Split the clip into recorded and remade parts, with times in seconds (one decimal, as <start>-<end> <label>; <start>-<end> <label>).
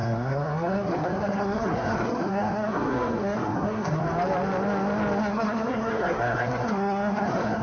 0.0-4.0 remade; 4.0-5.2 recorded; 5.2-7.6 remade